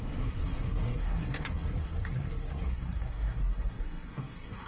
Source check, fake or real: fake